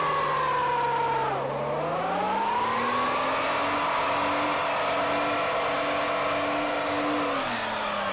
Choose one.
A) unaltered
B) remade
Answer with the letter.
A